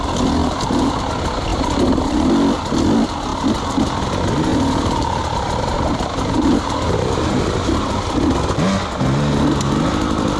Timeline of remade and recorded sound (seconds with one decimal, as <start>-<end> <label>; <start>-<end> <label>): 0.0-0.4 recorded; 0.4-1.1 remade; 1.1-1.5 recorded; 1.5-2.3 remade; 2.3-4.5 recorded; 4.5-7.9 remade; 7.9-10.4 recorded